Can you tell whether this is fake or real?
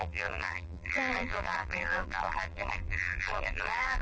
fake